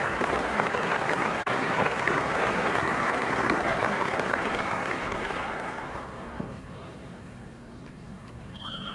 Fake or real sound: fake